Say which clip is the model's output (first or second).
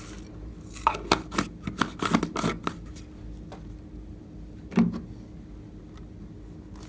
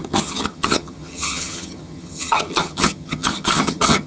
second